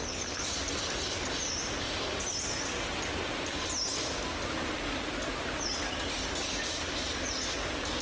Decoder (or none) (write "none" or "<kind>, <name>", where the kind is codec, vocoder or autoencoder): none